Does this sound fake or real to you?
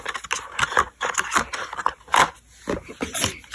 real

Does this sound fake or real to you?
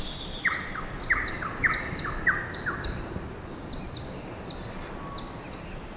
real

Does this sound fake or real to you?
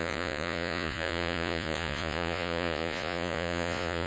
fake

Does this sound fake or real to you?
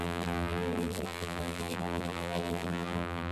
fake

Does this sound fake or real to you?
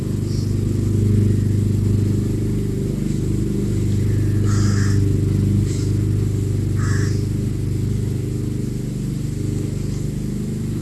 real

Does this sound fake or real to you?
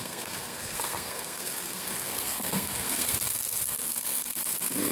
fake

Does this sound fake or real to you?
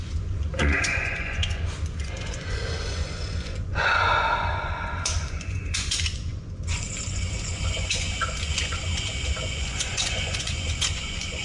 fake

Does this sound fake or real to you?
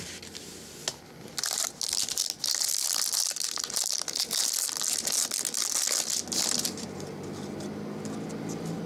real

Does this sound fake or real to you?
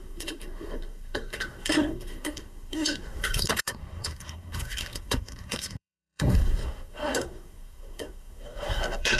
fake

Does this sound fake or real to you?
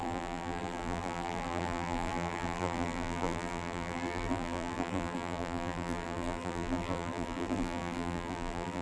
fake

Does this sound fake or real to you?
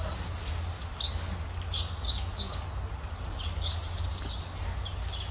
real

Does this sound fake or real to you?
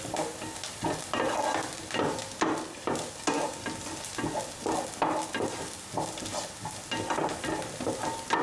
real